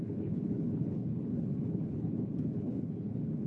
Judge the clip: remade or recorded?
remade